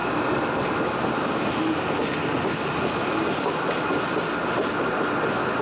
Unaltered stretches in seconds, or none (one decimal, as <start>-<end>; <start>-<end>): 0.0-5.6